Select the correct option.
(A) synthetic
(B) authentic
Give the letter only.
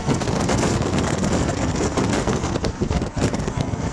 A